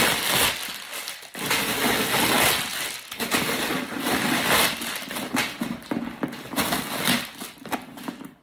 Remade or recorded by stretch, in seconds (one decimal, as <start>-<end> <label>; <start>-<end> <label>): 0.0-2.7 recorded; 2.7-5.4 remade; 5.4-8.4 recorded